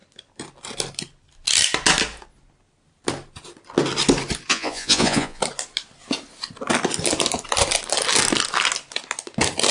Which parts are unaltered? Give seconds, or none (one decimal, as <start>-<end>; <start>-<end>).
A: 0.0-4.5; 5.4-9.7